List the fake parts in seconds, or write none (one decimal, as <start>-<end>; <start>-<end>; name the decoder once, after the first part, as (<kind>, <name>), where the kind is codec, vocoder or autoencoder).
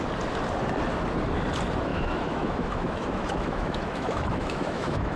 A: 1.9-5.2 (autoencoder, DAC-VAE)